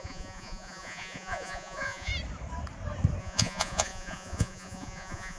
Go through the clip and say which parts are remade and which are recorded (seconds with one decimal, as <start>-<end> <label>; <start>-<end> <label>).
0.0-2.1 remade; 2.1-3.2 recorded; 3.2-5.4 remade